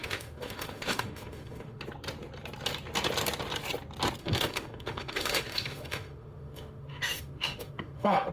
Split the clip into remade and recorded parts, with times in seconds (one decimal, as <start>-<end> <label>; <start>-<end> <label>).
0.0-1.8 remade; 1.8-4.2 recorded; 4.2-8.3 remade